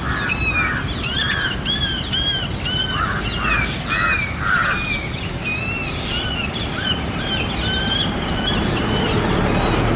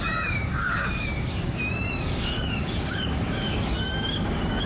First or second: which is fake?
second